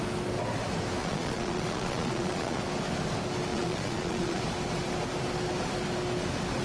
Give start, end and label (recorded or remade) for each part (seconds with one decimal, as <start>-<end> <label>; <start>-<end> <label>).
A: 0.0-1.0 recorded; 1.0-2.6 remade; 2.6-3.5 recorded; 3.5-4.4 remade; 4.4-6.6 recorded